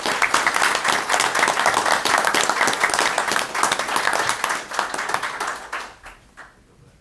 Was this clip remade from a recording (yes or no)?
no